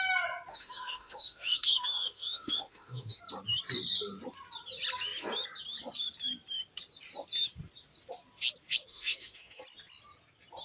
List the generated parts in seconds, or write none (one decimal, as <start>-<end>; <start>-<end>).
0.5-3.2; 8.9-9.6